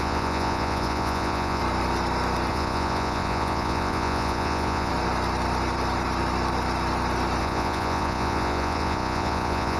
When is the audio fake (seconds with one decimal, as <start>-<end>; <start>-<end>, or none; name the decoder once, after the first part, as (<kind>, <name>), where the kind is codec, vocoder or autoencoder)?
0.0-1.6 (vocoder, Vocos); 2.5-4.9; 7.4-9.8